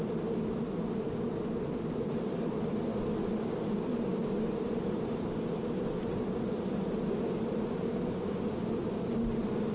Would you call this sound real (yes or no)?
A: yes